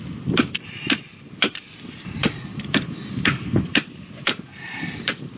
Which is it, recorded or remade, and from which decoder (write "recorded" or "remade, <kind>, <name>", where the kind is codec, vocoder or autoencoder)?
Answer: remade, vocoder, BigVGAN v2